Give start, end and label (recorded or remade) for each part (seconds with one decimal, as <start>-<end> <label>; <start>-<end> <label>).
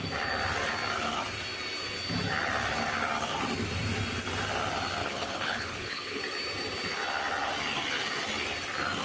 0.0-5.0 recorded; 5.0-6.2 remade; 6.2-9.0 recorded